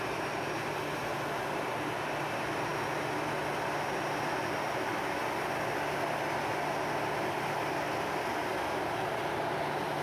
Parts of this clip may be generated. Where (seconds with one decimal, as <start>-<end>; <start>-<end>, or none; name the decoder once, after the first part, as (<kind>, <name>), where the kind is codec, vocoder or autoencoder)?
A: none